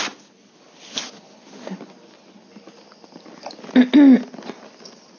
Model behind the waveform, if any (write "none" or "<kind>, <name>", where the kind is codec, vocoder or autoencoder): none